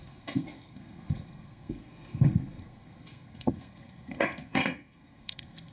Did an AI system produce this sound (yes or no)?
yes